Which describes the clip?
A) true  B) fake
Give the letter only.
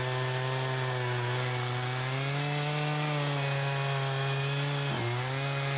A